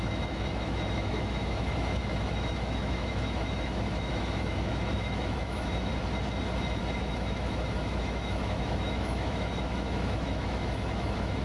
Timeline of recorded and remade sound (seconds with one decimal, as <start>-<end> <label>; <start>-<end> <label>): 0.0-5.9 remade; 5.9-6.8 recorded; 6.8-11.4 remade